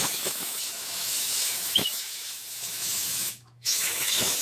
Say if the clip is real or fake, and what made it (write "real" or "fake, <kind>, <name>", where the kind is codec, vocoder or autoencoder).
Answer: fake, autoencoder, DAC-VAE